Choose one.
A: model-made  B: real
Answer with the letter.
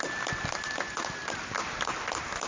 B